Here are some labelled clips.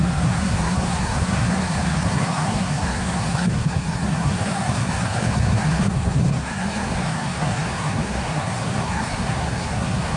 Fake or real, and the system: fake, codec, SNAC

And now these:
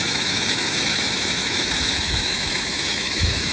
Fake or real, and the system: fake, autoencoder, DAC-VAE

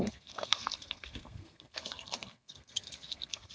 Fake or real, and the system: fake, codec, SNAC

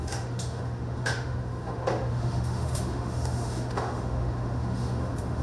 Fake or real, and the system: fake, autoencoder, DAC-VAE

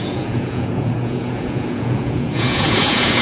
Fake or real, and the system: fake, vocoder, Vocos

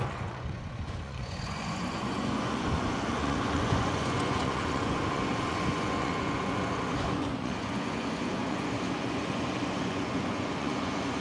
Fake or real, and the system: fake, vocoder, Vocos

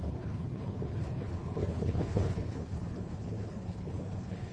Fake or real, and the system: fake, codec, HILCodec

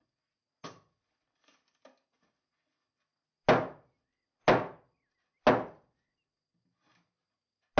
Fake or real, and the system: real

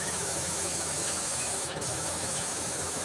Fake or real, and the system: fake, autoencoder, DAC-VAE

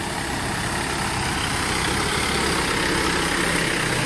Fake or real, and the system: real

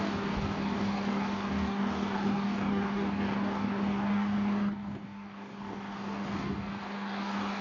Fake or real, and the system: fake, codec, DAC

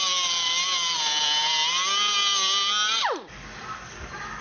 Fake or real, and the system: real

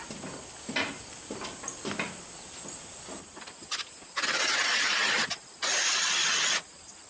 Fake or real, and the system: real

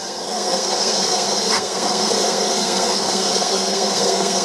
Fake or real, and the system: fake, codec, SNAC